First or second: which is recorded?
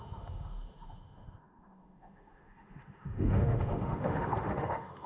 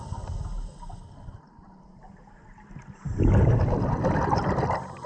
second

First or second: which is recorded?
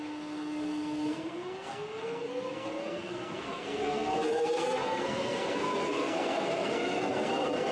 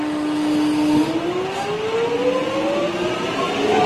second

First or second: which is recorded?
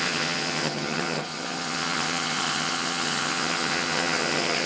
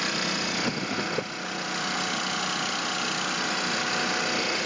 second